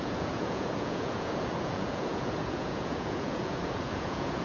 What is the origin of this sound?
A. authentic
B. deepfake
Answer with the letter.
B